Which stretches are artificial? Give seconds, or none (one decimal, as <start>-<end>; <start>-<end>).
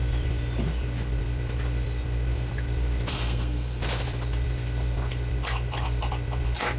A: 3.1-3.8